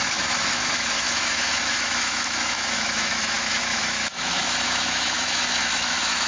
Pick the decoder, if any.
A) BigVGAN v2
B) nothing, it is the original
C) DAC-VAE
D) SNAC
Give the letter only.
C